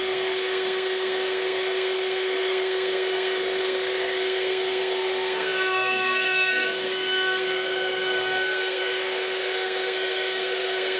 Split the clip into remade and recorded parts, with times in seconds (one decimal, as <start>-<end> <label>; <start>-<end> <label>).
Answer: 0.0-11.0 remade